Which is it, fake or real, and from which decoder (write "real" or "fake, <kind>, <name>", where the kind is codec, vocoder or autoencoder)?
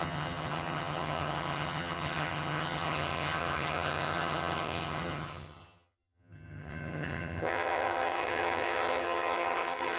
fake, vocoder, HiFi-GAN